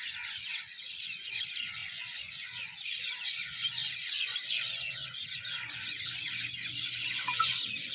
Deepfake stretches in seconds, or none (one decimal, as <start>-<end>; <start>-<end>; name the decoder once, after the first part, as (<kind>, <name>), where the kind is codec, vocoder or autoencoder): 0.0-7.9 (vocoder, Vocos)